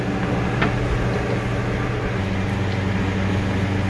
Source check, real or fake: real